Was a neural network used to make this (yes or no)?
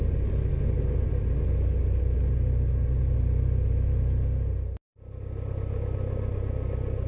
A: no